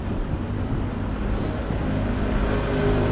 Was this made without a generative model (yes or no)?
yes